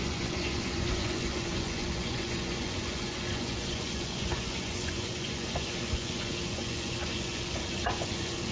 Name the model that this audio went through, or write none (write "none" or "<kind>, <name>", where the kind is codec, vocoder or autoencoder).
vocoder, Vocos